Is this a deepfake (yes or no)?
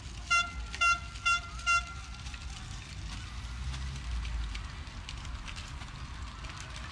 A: no